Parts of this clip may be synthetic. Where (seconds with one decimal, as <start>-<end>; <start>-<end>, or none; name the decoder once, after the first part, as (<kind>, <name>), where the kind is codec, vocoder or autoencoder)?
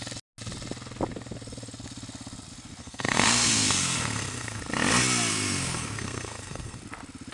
2.8-4.6 (codec, SNAC); 5.3-6.8